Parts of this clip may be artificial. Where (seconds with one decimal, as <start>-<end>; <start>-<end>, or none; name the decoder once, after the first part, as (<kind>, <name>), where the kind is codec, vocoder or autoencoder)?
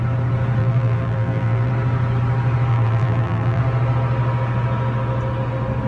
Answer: 0.6-1.7 (vocoder, BigVGAN v2); 2.7-3.6